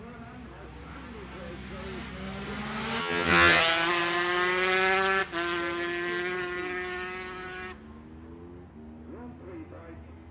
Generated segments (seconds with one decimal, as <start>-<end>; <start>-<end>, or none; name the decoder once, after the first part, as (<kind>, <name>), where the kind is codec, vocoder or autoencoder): 3.0-3.6 (vocoder, HiFi-GAN)

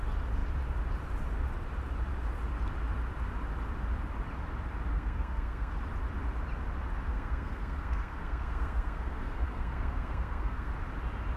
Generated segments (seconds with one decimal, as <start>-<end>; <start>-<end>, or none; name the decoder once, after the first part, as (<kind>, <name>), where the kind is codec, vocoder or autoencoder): 4.9-5.8 (codec, SNAC); 7.1-10.7

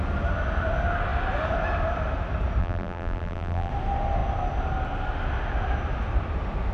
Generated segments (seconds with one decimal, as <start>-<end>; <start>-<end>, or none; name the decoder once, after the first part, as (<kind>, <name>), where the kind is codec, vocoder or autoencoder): 2.6-3.7 (vocoder, BigVGAN v2)

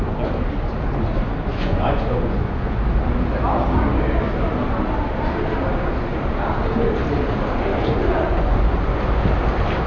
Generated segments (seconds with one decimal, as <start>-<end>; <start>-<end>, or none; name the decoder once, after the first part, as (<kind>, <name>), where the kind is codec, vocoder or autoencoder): 1.5-2.8 (vocoder, Vocos); 7.7-9.0

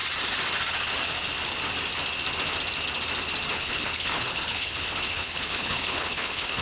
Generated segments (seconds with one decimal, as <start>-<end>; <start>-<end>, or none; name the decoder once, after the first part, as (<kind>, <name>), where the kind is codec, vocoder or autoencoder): 3.5-6.6 (codec, HILCodec)

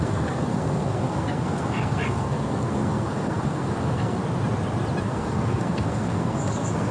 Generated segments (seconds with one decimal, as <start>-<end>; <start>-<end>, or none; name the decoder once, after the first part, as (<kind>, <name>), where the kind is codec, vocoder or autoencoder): 0.0-4.2 (codec, SNAC); 5.0-6.9

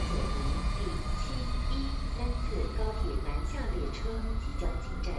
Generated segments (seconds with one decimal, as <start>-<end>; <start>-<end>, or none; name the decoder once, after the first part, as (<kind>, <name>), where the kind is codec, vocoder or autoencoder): 0.0-0.9 (vocoder, Vocos); 3.5-4.5